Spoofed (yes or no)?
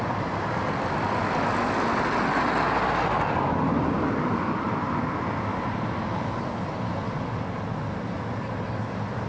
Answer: no